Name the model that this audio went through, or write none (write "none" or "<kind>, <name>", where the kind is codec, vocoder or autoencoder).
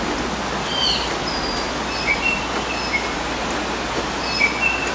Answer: none